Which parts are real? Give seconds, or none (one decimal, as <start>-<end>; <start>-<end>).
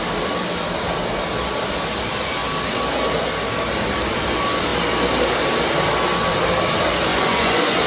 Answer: 0.0-7.1